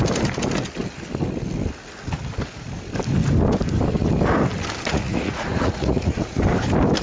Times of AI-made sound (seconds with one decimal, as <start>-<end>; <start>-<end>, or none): 4.9-6.4